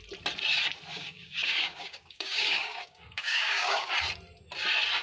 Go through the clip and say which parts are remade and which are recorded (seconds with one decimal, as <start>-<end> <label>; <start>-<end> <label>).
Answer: 0.0-0.9 recorded; 0.9-3.9 remade; 3.9-5.0 recorded